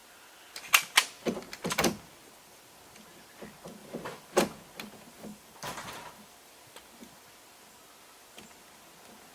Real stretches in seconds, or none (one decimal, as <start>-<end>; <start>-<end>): 0.0-3.8; 4.3-5.3; 6.5-9.3